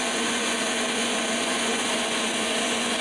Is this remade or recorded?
remade